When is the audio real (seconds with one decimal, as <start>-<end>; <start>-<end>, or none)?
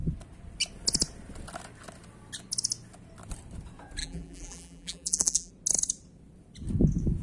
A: 0.0-4.0; 5.5-7.2